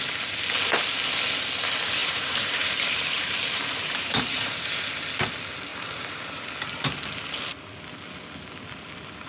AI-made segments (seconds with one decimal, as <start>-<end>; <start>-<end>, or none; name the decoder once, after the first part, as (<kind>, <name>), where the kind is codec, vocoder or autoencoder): 2.0-4.7 (vocoder, BigVGAN v2); 5.7-6.4